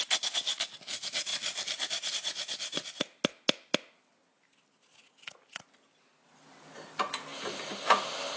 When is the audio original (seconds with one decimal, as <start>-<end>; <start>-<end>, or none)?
0.0-8.4